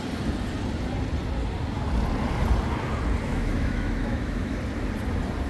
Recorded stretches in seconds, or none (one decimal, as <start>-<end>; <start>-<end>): 0.0-3.3; 4.6-5.5